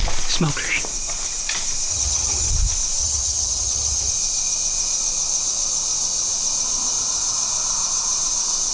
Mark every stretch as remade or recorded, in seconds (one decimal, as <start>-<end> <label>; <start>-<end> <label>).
0.0-1.9 recorded; 1.9-2.5 remade; 2.5-3.0 recorded; 3.0-4.1 remade; 4.1-8.7 recorded